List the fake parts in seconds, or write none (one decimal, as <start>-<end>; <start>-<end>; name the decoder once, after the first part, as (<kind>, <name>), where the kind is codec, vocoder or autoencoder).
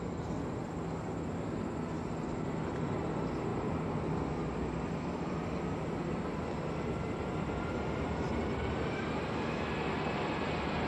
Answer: none